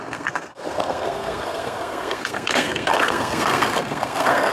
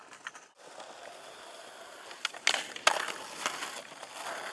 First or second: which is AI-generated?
first